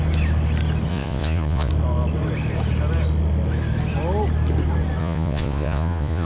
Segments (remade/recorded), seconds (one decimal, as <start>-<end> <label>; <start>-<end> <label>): 0.0-0.9 recorded; 0.9-1.7 remade; 1.7-5.0 recorded; 5.0-6.3 remade